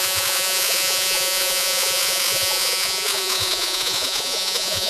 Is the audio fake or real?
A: fake